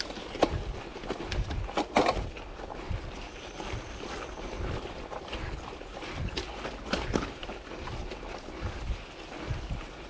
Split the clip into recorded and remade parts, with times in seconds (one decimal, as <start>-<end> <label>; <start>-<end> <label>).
0.0-10.1 recorded

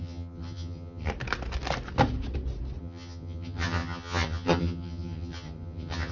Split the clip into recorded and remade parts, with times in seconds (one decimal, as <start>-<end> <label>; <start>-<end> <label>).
0.0-1.1 remade; 1.1-2.8 recorded; 2.8-6.1 remade

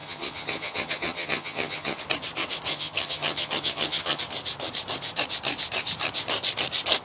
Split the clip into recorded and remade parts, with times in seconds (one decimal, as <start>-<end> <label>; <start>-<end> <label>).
0.0-2.0 remade; 2.0-2.7 recorded; 2.7-4.2 remade; 4.2-7.0 recorded

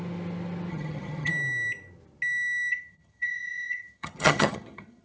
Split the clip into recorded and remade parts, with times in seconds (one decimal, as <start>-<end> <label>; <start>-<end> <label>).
0.0-0.7 recorded; 0.7-1.3 remade; 1.3-2.7 recorded; 2.7-5.0 remade